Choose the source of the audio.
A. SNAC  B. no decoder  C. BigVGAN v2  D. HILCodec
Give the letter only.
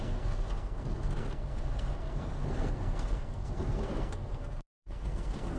A